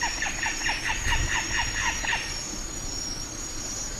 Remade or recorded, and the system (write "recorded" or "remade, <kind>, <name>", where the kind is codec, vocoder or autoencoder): recorded